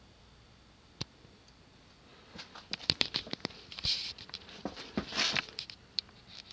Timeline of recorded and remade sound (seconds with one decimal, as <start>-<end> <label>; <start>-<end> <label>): 0.0-2.1 remade; 2.1-2.8 recorded; 2.8-6.5 remade